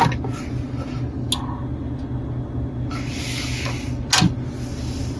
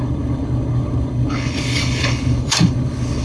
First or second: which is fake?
second